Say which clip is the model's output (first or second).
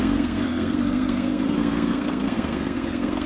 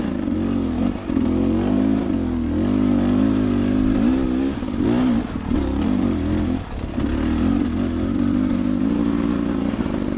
first